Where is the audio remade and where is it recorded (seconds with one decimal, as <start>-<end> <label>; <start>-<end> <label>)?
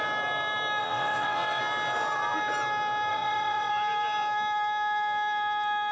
0.0-0.8 recorded; 0.8-1.6 remade; 1.6-3.1 recorded; 3.1-3.7 remade; 3.7-5.9 recorded